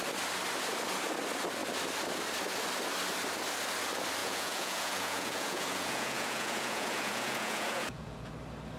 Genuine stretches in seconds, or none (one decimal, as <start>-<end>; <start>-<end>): 0.0-4.2; 8.3-8.8